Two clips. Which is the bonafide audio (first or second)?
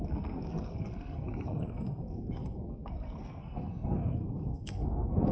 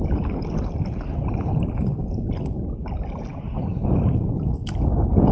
second